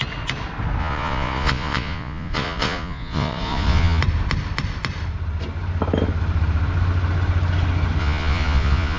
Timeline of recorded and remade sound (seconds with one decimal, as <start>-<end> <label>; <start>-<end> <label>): 0.0-0.8 recorded; 0.8-4.0 remade; 4.0-8.0 recorded; 8.0-9.0 remade